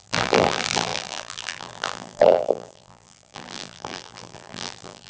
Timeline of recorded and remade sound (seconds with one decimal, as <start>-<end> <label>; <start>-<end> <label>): 0.0-5.1 remade